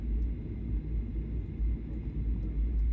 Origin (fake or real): real